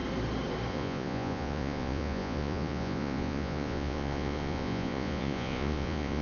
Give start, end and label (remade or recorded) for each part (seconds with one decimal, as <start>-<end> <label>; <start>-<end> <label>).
0.0-0.7 recorded; 0.7-6.2 remade